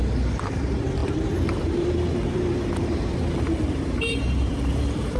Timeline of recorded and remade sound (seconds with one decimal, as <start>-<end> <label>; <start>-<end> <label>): 0.0-5.2 remade